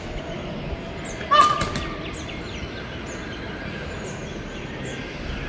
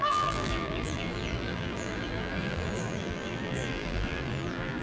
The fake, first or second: second